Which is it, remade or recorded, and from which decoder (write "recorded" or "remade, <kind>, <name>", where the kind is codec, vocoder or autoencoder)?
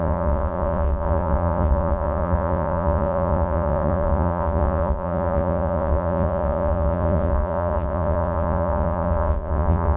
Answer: remade, vocoder, Vocos